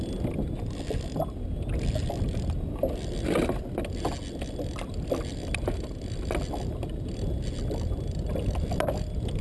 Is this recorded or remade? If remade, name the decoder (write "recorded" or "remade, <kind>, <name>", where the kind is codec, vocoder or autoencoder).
recorded